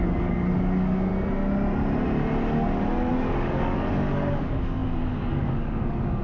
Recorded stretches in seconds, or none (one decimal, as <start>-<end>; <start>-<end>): 1.1-3.1